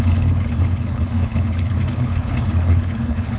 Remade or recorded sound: remade